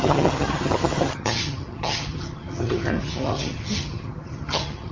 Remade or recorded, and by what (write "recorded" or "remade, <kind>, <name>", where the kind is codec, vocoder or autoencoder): remade, vocoder, HiFi-GAN